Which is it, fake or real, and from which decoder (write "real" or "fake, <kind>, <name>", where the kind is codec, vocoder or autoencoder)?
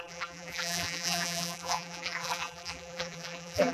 fake, vocoder, BigVGAN v2